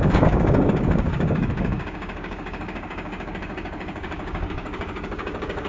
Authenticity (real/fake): fake